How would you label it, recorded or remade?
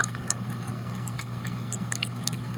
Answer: remade